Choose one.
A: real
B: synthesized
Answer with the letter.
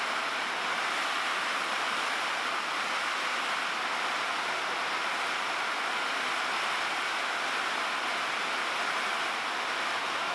A